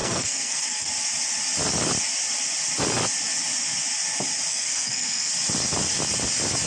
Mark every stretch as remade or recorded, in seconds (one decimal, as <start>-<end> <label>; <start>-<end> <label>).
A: 0.0-0.9 remade; 0.9-4.5 recorded; 4.5-5.3 remade; 5.3-6.7 recorded